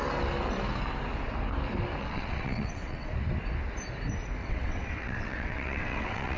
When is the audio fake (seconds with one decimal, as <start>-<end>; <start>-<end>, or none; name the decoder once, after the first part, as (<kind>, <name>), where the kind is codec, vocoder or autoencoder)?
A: 2.0-3.1 (vocoder, WaveNeXt); 4.4-6.4